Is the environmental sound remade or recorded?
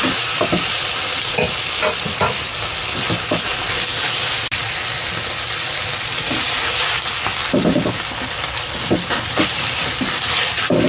recorded